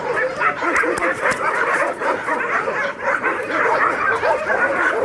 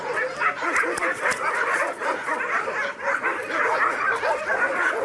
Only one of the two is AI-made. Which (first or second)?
first